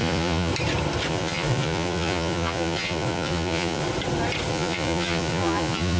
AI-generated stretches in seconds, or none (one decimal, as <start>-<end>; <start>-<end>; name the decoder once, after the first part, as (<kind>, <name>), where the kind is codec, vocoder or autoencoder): 0.0-0.5 (vocoder, Vocos); 1.1-3.9; 4.5-6.0